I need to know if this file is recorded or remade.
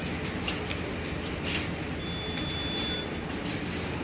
recorded